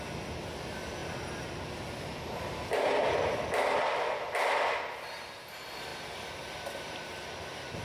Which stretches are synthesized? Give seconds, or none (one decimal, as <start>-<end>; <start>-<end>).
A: none